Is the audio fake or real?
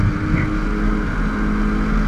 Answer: real